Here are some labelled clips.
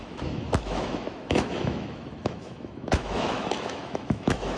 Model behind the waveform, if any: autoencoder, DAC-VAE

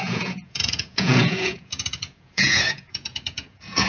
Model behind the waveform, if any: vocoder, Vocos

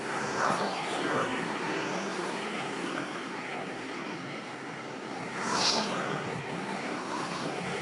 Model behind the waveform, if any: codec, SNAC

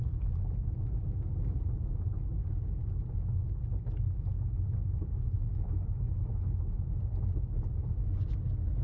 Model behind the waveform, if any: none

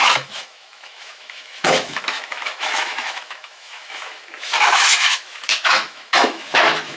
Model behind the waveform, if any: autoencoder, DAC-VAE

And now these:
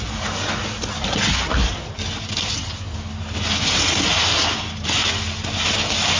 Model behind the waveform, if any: none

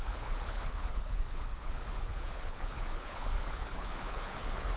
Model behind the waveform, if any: codec, HILCodec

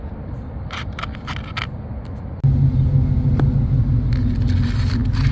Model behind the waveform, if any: none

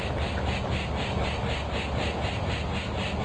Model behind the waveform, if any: none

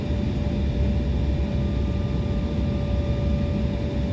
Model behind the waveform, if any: none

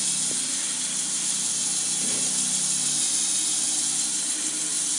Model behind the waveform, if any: none